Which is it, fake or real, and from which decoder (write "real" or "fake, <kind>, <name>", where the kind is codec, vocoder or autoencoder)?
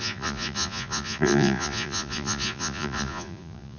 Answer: fake, vocoder, Vocos